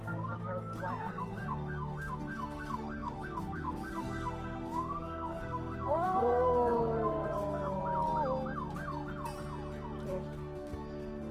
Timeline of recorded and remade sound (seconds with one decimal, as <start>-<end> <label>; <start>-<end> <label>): 0.0-0.4 remade; 0.4-1.0 recorded; 1.0-7.8 remade; 7.8-10.1 recorded; 10.1-11.3 remade